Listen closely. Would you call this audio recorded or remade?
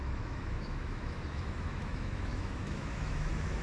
remade